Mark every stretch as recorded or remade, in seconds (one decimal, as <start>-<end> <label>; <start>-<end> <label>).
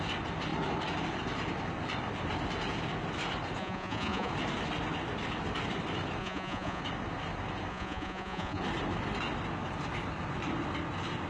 0.0-3.6 recorded; 3.6-4.3 remade; 4.3-6.2 recorded; 6.2-6.8 remade; 6.8-7.7 recorded; 7.7-8.6 remade; 8.6-11.3 recorded